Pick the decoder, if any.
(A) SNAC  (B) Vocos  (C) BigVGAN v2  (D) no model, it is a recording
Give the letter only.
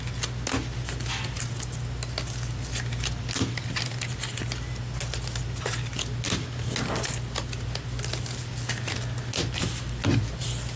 D